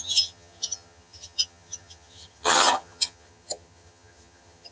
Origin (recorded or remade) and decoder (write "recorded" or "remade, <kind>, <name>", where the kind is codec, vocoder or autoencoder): remade, vocoder, HiFi-GAN